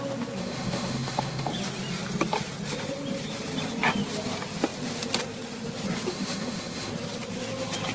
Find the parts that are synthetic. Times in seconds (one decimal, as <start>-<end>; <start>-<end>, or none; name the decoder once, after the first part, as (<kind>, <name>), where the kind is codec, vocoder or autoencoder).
0.4-1.5 (autoencoder, DAC-VAE); 6.1-6.9